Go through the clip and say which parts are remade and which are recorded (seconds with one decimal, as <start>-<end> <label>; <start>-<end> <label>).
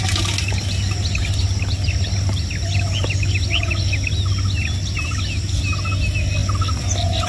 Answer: 0.0-7.3 recorded